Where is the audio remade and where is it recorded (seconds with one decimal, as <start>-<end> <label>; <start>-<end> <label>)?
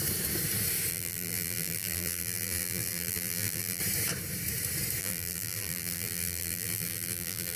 0.0-0.9 recorded; 0.9-3.8 remade; 3.8-5.0 recorded; 5.0-7.6 remade